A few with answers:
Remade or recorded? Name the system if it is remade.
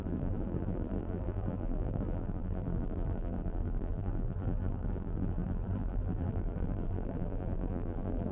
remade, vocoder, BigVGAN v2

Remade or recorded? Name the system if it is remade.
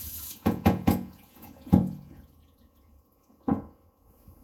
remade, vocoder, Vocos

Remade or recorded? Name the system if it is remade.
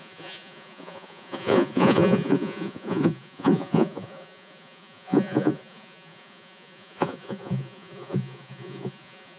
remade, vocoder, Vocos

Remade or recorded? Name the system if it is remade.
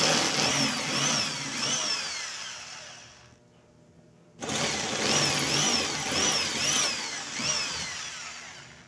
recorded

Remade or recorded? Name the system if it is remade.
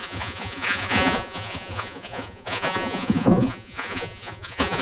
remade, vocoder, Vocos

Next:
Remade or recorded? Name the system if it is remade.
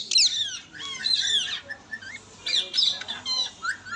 recorded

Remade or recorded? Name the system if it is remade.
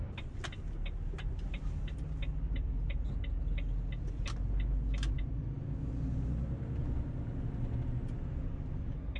recorded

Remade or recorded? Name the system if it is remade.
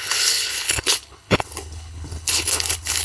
remade, codec, HILCodec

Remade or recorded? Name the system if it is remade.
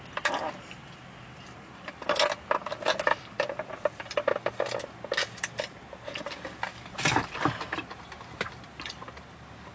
recorded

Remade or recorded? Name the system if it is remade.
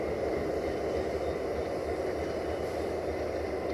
recorded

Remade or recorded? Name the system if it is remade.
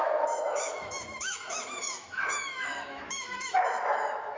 remade, autoencoder, DAC-VAE